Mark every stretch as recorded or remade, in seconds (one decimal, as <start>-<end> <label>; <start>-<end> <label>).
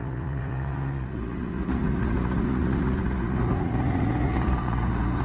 0.0-5.2 remade